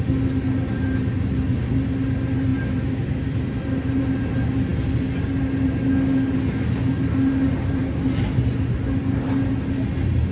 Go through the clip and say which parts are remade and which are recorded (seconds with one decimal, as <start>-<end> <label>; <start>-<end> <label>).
0.0-10.3 recorded